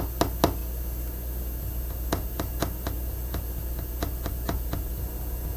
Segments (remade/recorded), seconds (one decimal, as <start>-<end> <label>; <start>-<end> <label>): 0.0-5.6 recorded